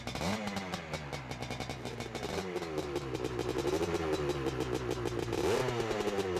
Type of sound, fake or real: real